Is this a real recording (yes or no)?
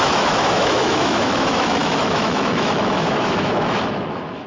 no